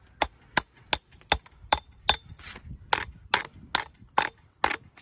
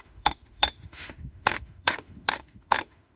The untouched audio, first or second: first